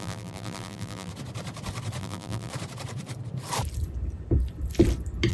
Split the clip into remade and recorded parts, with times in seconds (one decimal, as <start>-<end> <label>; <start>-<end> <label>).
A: 0.0-1.1 remade; 1.1-2.0 recorded; 2.0-2.5 remade; 2.5-5.3 recorded